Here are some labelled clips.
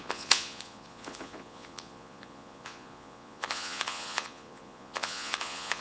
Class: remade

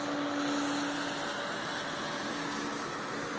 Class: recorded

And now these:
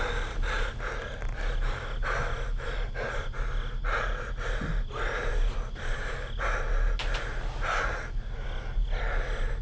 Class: recorded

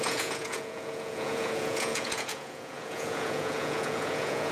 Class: remade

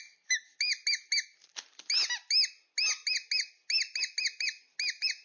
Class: recorded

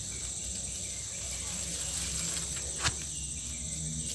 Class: recorded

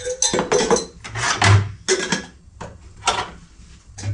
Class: recorded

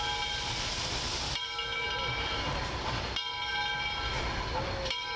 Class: recorded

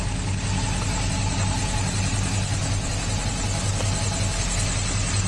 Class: recorded